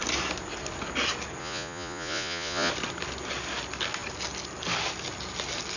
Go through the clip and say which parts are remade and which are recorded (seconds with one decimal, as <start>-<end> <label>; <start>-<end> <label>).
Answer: 0.0-1.4 recorded; 1.4-2.7 remade; 2.7-5.8 recorded